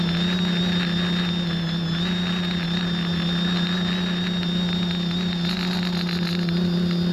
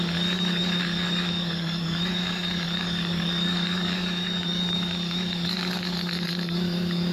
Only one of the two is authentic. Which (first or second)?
first